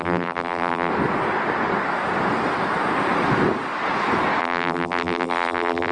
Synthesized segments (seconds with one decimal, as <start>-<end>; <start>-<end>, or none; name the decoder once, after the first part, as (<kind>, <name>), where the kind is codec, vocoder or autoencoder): 0.0-0.9 (vocoder, BigVGAN v2); 4.4-5.9